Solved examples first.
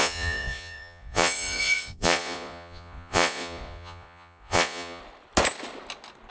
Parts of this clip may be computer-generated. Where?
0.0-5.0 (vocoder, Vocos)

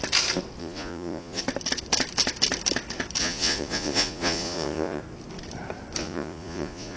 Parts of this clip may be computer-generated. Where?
0.6-1.4 (vocoder, Vocos); 3.2-5.0; 6.0-7.0

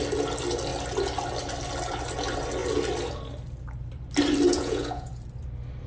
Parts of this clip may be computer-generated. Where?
4.5-5.1 (vocoder, Vocos)

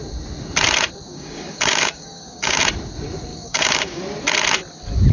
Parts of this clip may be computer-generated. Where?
1.1-2.6 (codec, DAC); 3.3-4.0

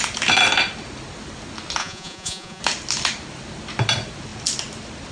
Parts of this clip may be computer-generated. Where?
1.8-2.6 (vocoder, Vocos)

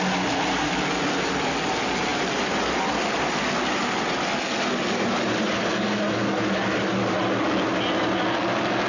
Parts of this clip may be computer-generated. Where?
none

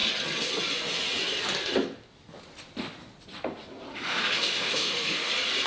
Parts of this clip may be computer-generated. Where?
3.9-5.3 (autoencoder, DAC-VAE)